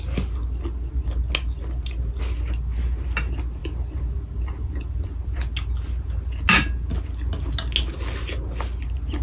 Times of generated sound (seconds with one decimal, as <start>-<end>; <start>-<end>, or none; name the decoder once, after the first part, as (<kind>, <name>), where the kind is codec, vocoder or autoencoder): 3.6-5.4 (vocoder, BigVGAN v2)